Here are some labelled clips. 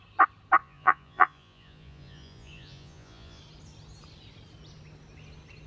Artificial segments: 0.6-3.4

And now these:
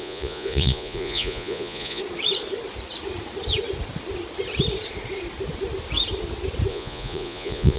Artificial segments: 0.0-2.0; 6.7-7.8

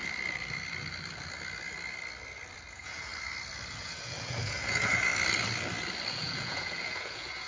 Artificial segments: 2.7-3.1; 3.8-5.1; 6.1-7.5

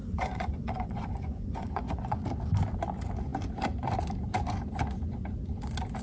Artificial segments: 0.0-2.2